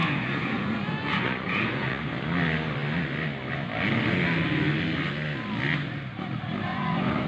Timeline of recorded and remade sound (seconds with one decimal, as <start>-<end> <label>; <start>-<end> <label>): 0.0-2.0 remade; 2.0-6.7 recorded; 6.7-7.3 remade